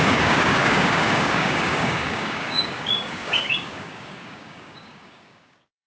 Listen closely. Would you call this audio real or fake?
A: fake